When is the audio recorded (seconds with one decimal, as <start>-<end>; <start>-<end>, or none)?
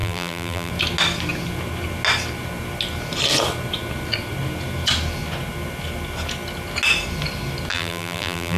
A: 0.7-7.7